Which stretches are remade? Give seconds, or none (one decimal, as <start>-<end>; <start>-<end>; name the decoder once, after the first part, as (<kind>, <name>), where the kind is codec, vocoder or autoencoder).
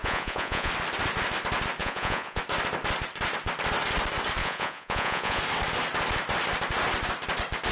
0.0-0.7 (vocoder, Vocos); 1.8-2.4; 4.4-5.4